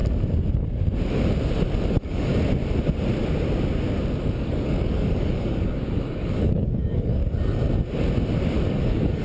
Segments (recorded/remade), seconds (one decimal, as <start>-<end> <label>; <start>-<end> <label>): 0.0-1.9 recorded; 1.9-2.3 remade; 2.3-4.2 recorded; 4.2-7.2 remade; 7.2-8.7 recorded; 8.7-9.2 remade